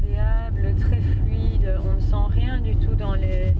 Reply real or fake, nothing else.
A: real